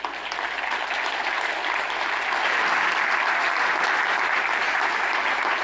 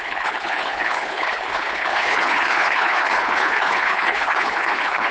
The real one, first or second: first